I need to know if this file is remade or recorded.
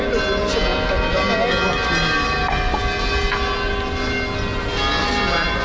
recorded